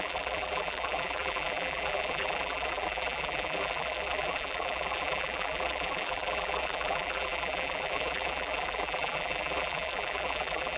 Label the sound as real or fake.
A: fake